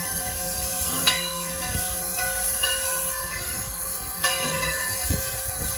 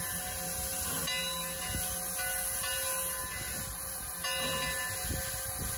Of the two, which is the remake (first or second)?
first